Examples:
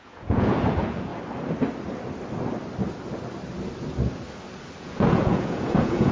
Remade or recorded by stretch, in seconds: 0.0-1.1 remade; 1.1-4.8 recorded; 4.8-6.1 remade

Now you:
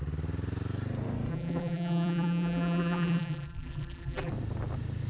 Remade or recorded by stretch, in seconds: 0.0-1.3 recorded; 1.3-4.3 remade; 4.3-5.1 recorded

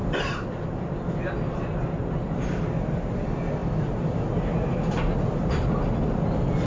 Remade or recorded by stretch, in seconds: 0.0-6.7 recorded

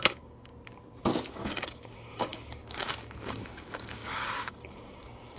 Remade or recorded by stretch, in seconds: 0.0-0.5 remade; 0.5-1.3 recorded; 1.3-5.4 remade

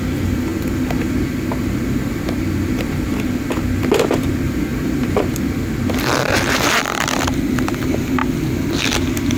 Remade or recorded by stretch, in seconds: 0.0-0.5 remade; 0.5-3.8 recorded; 3.8-8.2 remade; 8.2-8.8 recorded; 8.8-9.4 remade